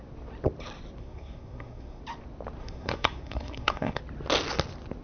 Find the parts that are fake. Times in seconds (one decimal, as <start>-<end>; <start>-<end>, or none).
1.0-2.0; 2.6-4.0